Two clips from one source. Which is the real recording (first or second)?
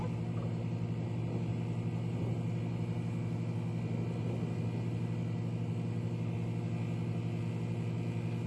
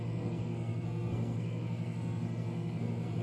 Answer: first